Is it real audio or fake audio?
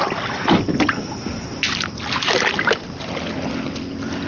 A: real